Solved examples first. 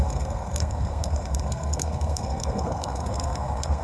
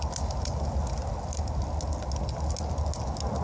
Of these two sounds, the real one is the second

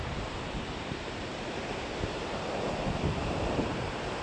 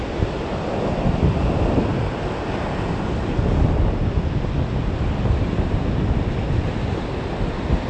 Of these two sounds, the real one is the second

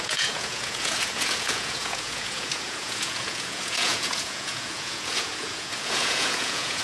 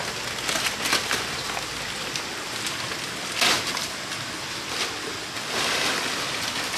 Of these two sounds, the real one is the second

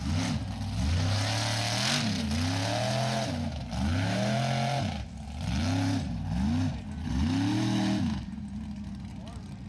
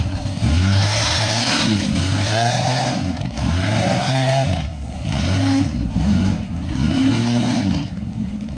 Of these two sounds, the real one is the first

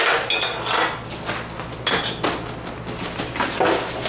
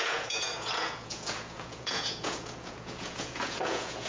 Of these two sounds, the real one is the first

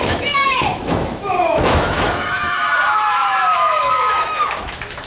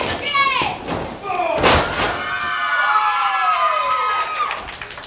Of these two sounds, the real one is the second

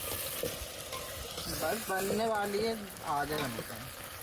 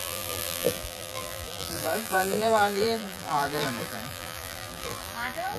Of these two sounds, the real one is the first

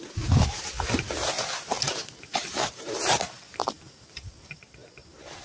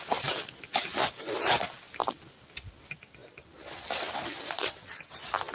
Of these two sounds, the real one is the second